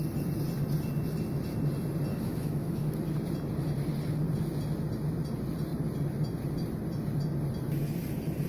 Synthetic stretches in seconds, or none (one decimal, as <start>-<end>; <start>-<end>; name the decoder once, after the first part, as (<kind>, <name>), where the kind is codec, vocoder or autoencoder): 2.1-3.1 (autoencoder, DAC-VAE)